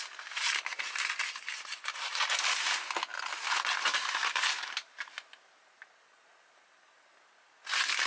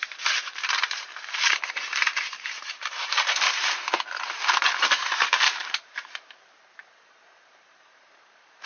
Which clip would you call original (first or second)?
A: first